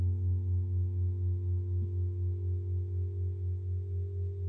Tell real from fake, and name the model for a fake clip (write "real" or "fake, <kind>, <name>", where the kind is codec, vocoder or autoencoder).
real